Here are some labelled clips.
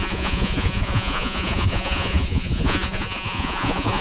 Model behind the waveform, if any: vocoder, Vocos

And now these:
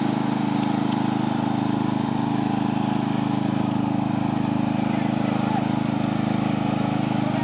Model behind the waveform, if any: none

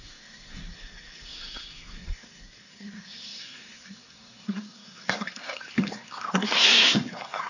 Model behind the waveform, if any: codec, SNAC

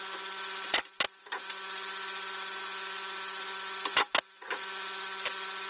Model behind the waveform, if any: none